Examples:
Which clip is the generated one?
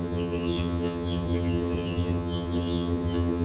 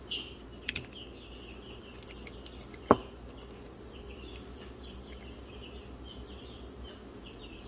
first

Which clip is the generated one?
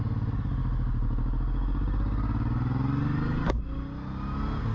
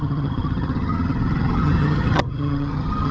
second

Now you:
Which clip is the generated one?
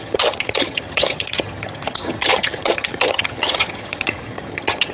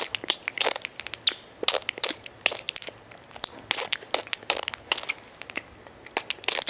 first